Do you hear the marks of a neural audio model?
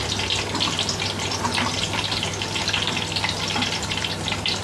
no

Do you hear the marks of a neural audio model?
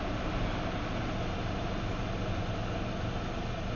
no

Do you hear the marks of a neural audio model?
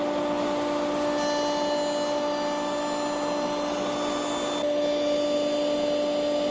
no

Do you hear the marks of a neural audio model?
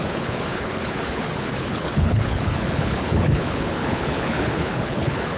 yes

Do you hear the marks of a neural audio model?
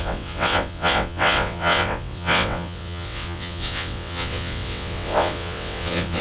yes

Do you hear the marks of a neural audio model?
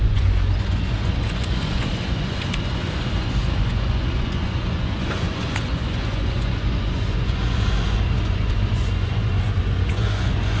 yes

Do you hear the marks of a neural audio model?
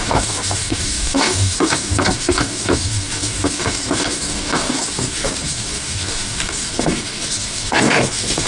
yes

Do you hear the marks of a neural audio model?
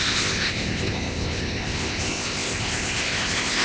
yes